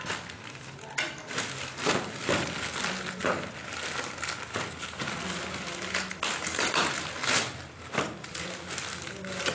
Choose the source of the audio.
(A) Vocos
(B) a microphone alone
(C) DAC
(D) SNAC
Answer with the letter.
B